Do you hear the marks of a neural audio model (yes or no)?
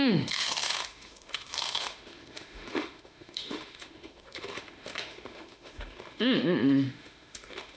yes